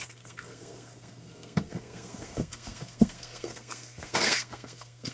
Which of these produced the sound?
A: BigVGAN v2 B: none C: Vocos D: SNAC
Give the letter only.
D